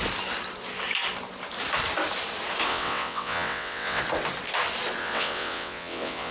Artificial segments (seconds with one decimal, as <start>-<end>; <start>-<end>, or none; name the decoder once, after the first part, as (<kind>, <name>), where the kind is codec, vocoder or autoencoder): 2.7-4.0 (vocoder, WaveNeXt); 5.0-6.3